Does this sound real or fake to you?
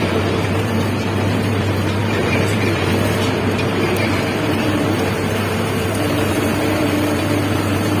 fake